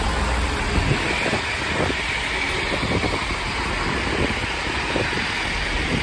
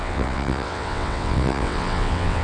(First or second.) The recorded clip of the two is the first